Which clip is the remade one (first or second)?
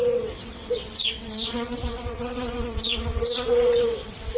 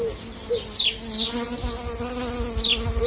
first